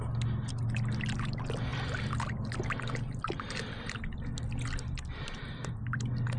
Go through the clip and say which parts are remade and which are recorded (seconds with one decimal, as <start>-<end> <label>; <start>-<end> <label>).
0.0-6.4 recorded